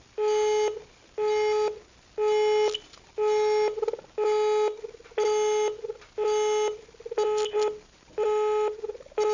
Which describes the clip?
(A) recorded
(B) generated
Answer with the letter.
A